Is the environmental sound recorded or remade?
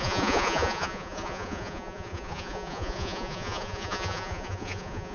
remade